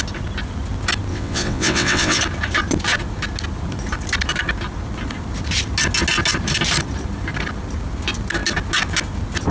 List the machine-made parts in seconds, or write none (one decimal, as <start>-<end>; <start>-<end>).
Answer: 1.1-2.2